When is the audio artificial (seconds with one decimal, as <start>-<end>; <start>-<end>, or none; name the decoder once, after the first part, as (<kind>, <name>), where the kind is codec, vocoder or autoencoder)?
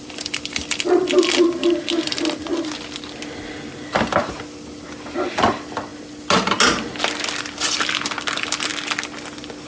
0.0-2.5 (vocoder, BigVGAN v2); 5.4-5.9; 7.4-8.7